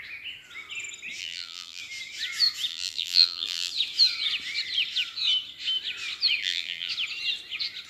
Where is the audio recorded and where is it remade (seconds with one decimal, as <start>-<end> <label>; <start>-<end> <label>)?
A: 0.0-1.2 recorded; 1.2-1.8 remade; 1.8-2.7 recorded; 2.7-3.7 remade; 3.7-6.4 recorded; 6.4-6.9 remade; 6.9-7.9 recorded